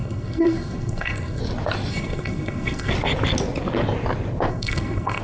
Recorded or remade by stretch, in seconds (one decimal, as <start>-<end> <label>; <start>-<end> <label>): 0.0-1.4 remade; 1.4-1.9 recorded; 1.9-2.9 remade; 2.9-4.5 recorded; 4.5-5.2 remade